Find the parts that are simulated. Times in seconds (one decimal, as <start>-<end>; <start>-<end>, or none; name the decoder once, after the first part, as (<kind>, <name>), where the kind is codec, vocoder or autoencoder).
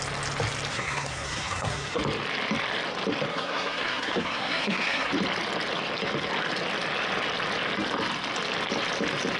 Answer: 0.7-2.0 (codec, SNAC); 3.3-5.1